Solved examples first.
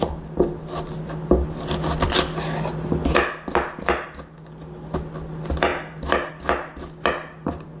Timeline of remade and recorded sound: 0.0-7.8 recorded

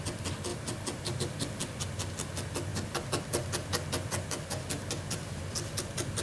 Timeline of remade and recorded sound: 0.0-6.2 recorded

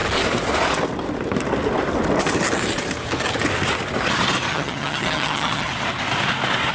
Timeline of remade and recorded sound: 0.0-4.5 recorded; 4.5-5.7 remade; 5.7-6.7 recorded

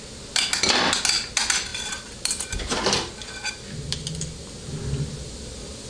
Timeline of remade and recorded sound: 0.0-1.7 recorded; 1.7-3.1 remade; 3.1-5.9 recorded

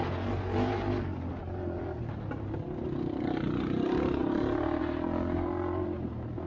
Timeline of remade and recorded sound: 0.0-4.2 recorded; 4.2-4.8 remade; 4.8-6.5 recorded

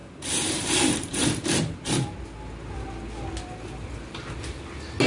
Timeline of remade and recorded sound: 0.0-2.1 remade; 2.1-5.1 recorded